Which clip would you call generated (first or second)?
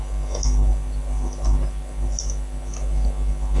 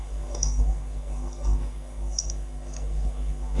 second